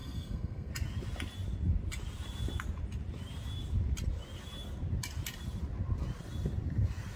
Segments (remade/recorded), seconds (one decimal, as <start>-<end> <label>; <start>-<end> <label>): 0.0-0.7 remade; 0.7-7.2 recorded